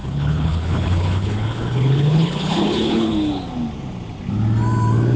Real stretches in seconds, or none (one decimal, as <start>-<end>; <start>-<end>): 3.1-5.2